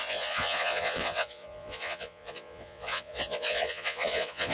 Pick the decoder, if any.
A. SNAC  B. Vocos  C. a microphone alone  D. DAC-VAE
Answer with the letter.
B